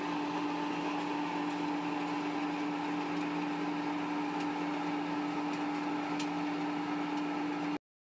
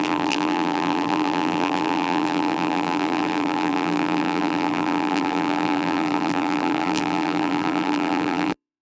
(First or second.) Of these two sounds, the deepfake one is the second